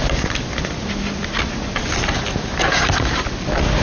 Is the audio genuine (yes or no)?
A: yes